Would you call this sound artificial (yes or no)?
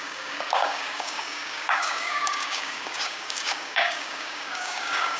yes